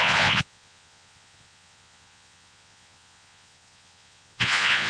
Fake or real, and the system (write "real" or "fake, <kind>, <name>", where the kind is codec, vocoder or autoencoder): fake, vocoder, Vocos